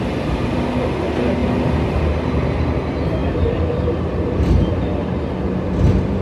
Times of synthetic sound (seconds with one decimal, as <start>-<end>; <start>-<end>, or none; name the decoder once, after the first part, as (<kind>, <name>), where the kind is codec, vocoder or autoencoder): 1.4-2.0 (vocoder, BigVGAN v2)